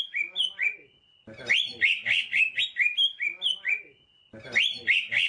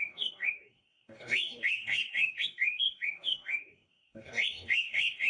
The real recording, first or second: first